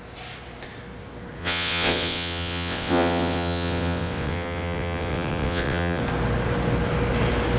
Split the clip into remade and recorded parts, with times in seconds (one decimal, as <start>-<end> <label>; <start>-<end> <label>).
0.0-1.4 recorded; 1.4-6.0 remade; 6.0-7.6 recorded